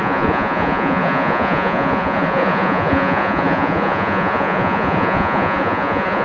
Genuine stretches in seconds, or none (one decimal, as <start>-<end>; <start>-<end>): none